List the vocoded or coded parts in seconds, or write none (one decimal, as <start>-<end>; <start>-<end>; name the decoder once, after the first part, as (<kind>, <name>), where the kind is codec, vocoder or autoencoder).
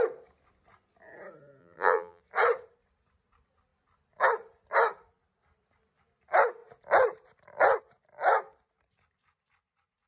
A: 1.6-2.2 (vocoder, BigVGAN v2)